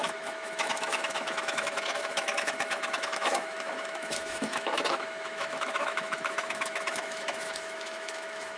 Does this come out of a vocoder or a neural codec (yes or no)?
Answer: yes